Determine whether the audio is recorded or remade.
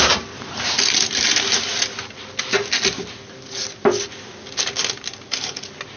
recorded